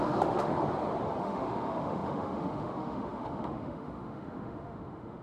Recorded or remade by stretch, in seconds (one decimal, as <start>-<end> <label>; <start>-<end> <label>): 0.0-0.5 remade; 0.5-1.2 recorded; 1.2-5.2 remade